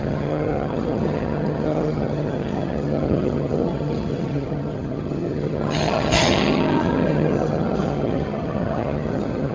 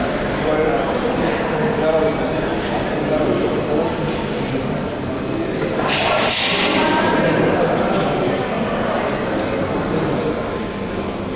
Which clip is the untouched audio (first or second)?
second